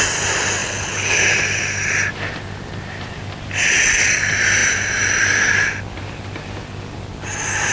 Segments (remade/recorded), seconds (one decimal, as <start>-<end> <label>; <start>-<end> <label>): 0.0-0.6 recorded; 0.6-1.2 remade; 1.2-7.7 recorded